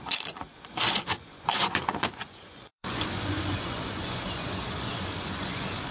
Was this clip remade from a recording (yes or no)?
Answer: yes